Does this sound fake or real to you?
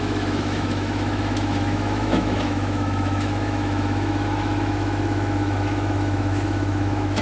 fake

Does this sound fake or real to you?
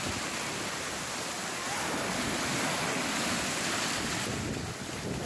real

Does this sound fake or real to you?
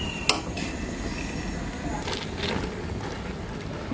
real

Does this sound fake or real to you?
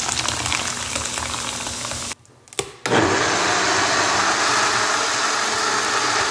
real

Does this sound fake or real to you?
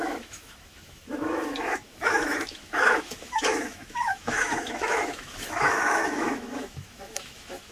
fake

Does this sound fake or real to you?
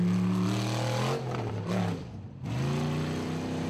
real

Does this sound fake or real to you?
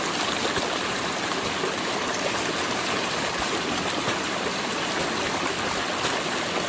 real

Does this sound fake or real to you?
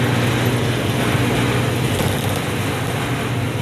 real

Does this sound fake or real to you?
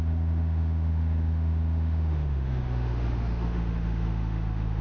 fake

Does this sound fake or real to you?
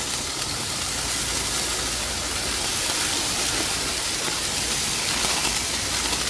real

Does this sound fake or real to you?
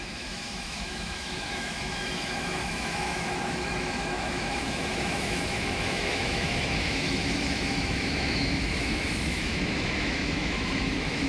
fake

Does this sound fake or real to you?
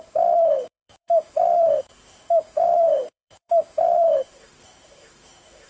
fake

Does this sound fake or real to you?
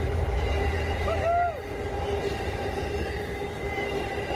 real